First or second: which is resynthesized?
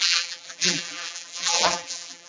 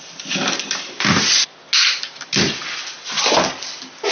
first